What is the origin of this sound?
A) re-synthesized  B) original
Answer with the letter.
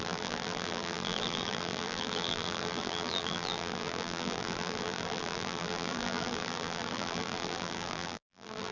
A